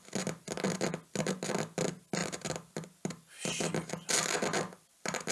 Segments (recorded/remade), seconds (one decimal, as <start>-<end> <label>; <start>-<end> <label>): 0.0-5.3 recorded